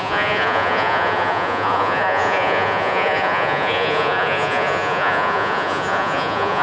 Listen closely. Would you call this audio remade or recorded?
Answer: remade